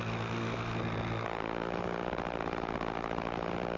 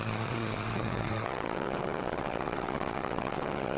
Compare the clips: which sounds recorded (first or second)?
first